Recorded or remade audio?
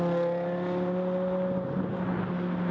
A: recorded